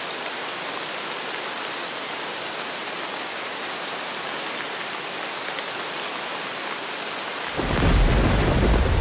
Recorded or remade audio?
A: recorded